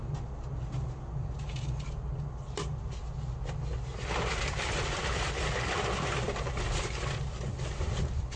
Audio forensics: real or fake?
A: real